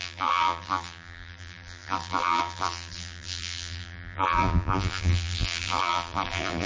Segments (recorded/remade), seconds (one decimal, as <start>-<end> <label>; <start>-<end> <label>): 0.0-6.7 remade